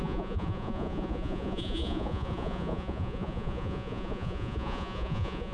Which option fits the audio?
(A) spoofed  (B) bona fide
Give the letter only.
A